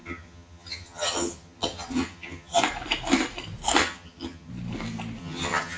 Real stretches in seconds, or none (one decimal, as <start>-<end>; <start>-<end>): 2.6-3.8; 4.5-5.2